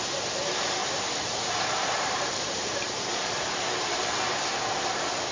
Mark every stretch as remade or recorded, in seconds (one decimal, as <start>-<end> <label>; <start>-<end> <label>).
0.0-0.8 recorded; 0.8-4.0 remade; 4.0-5.3 recorded